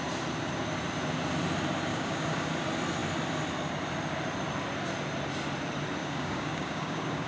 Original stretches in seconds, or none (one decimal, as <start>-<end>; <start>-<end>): 0.0-1.9; 2.5-6.0